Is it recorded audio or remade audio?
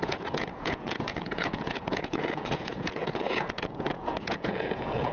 remade